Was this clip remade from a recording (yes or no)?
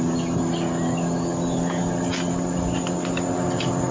no